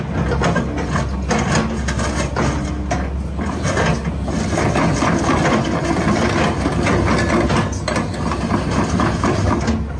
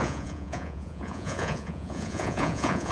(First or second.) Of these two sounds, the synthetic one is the second